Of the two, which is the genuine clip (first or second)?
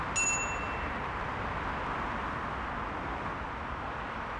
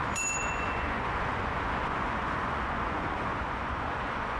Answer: first